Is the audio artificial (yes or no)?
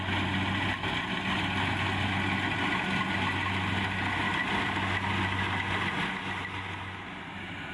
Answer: no